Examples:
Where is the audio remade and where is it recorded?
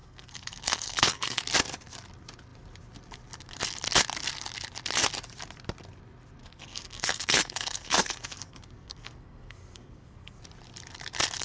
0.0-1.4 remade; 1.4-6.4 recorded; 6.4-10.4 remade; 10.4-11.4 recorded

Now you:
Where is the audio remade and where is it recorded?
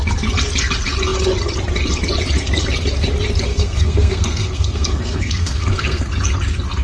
0.0-3.5 recorded; 3.5-6.1 remade; 6.1-6.8 recorded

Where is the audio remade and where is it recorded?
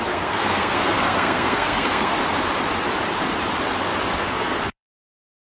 0.0-2.1 remade; 2.1-4.3 recorded; 4.3-5.4 remade